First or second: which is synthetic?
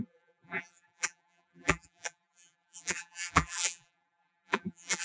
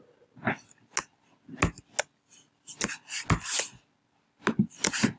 first